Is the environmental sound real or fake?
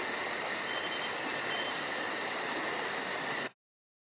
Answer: real